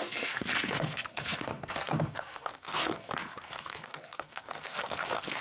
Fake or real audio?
fake